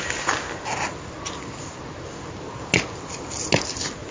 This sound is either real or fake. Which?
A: real